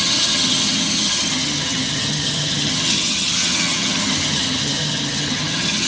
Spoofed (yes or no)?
yes